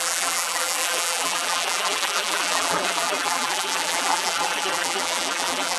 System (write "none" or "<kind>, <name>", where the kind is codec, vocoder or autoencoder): vocoder, BigVGAN v2